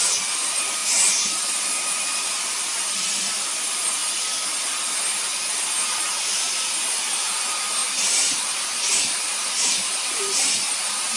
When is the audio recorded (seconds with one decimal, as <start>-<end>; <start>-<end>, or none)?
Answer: 4.0-5.8; 7.8-9.0